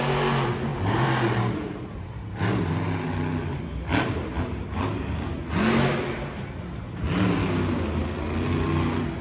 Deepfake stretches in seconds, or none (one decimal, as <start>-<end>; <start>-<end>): 0.7-2.7